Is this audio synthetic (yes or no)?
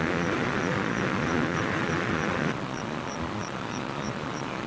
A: yes